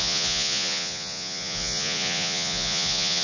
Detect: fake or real fake